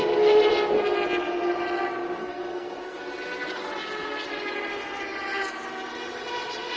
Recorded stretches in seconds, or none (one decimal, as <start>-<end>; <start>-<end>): 0.0-2.2; 3.0-6.8